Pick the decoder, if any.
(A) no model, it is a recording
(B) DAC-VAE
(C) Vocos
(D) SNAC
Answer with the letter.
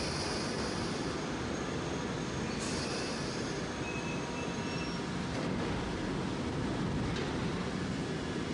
A